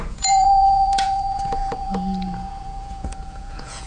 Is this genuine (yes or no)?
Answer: no